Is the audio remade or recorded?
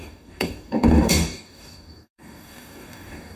remade